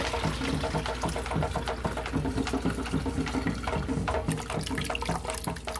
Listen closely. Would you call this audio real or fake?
real